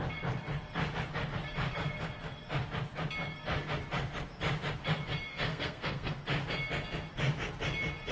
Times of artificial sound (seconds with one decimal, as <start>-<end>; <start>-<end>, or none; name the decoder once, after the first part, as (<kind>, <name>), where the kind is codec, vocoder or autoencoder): 5.3-6.2 (codec, SNAC)